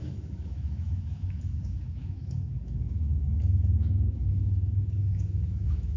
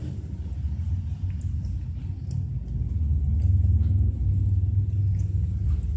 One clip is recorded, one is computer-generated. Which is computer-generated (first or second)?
first